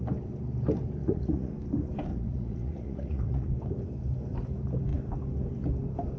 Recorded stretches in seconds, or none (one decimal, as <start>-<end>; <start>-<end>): 0.0-1.0; 1.5-2.1; 3.5-6.2